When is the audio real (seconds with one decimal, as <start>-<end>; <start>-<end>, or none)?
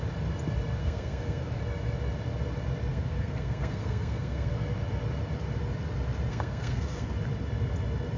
0.0-0.8; 1.6-2.9; 4.5-6.3; 7.1-8.2